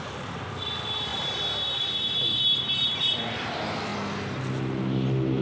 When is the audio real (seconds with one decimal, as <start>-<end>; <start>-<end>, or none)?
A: 1.1-2.3; 3.9-5.4